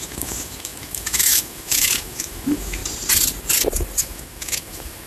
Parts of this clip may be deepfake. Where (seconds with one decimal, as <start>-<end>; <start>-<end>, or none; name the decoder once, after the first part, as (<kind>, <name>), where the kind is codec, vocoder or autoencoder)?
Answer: 0.0-2.8 (autoencoder, DAC-VAE); 4.0-5.1